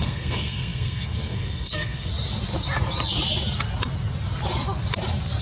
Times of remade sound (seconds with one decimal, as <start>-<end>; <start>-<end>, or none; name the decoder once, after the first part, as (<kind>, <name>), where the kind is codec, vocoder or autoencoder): 0.0-2.1 (codec, SNAC)